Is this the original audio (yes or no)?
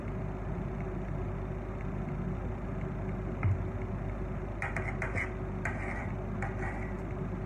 yes